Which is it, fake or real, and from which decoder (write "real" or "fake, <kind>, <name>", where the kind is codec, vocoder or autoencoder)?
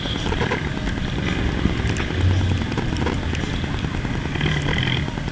real